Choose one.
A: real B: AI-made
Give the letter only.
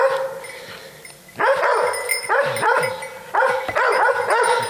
A